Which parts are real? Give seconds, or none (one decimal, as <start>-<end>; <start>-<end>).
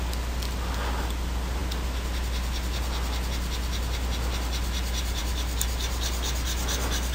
0.0-7.1